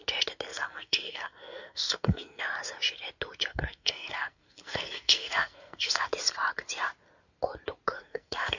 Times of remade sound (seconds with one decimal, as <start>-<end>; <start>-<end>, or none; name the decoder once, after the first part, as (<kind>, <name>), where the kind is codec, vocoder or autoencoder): 0.5-2.4 (codec, SNAC); 3.5-6.1; 8.0-8.6